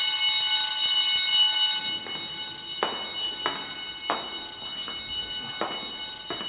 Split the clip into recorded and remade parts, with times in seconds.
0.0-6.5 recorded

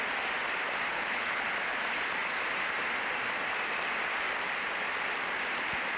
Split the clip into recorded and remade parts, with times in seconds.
0.0-0.9 recorded; 0.9-1.5 remade; 1.5-6.0 recorded

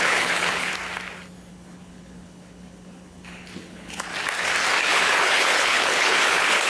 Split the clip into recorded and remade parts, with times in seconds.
0.0-0.7 remade; 0.7-1.5 recorded; 1.5-4.1 remade; 4.1-4.8 recorded; 4.8-6.7 remade

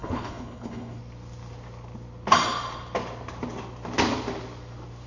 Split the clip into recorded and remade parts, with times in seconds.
0.0-1.0 remade; 1.0-5.1 recorded

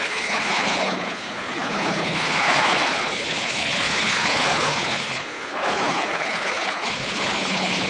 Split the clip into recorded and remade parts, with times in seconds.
0.0-7.9 remade

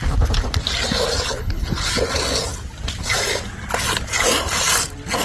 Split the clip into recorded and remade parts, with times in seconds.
0.0-1.3 recorded; 1.3-1.9 remade; 1.9-5.2 recorded